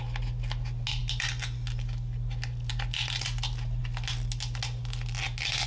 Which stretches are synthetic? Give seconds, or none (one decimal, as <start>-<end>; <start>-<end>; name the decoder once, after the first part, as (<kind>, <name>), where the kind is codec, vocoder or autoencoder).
none